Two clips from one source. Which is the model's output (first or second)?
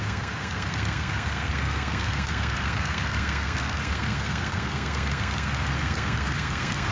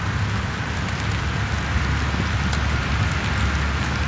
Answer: first